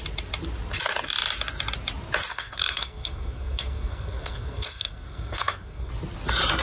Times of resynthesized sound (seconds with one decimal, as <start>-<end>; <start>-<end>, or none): 2.3-5.9